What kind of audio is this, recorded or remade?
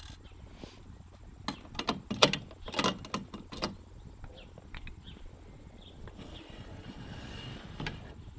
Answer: recorded